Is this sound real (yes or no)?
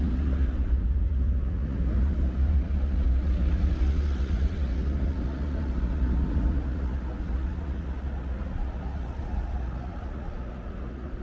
no